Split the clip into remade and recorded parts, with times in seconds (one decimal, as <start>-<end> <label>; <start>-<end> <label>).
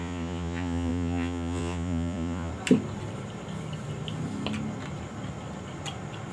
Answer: 0.0-2.5 remade; 2.5-6.3 recorded